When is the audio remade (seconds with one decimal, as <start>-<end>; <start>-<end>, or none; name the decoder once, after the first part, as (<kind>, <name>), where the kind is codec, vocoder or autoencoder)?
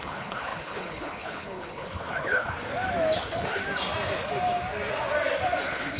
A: 0.0-2.7 (codec, HILCodec); 3.2-3.6; 5.6-6.0